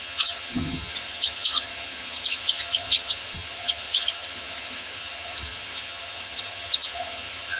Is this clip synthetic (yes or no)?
yes